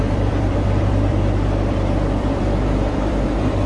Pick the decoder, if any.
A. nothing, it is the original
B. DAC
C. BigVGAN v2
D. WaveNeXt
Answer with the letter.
C